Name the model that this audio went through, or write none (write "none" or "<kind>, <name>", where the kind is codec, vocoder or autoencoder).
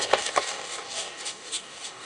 codec, DAC